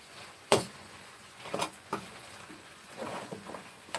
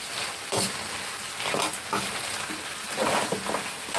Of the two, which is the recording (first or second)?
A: second